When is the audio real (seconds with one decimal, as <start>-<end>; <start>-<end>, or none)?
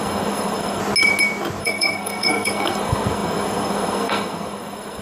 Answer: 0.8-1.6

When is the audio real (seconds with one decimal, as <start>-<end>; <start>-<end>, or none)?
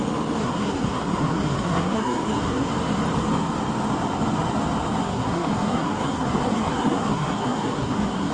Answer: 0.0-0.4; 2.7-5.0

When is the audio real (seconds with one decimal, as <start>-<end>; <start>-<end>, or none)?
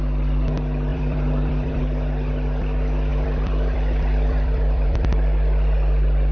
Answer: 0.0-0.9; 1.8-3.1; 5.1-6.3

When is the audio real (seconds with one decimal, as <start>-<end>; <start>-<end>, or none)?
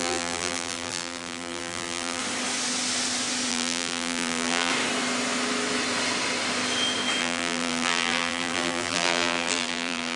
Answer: 2.2-3.5; 4.7-7.2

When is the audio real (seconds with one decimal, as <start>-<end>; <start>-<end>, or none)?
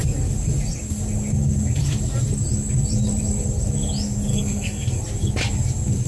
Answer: 0.0-4.3; 5.0-6.1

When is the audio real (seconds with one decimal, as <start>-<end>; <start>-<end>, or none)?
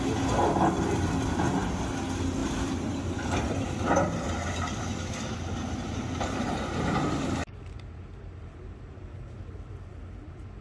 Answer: 0.0-2.4; 4.1-10.6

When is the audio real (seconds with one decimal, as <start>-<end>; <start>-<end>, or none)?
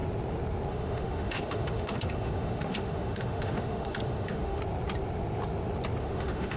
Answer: 0.0-0.7; 4.6-6.0